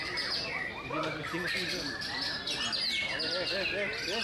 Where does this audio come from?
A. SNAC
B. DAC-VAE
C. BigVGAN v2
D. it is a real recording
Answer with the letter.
D